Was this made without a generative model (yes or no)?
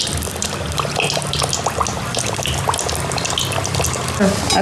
yes